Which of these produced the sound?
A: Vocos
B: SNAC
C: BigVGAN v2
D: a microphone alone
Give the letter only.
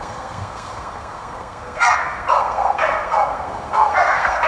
B